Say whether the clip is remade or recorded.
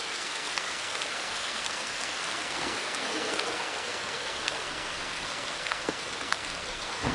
remade